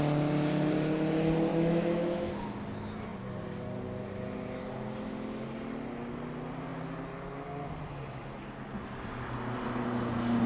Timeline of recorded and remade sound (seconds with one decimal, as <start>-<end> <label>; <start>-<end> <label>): 0.0-1.5 recorded; 1.5-2.3 remade; 2.3-10.5 recorded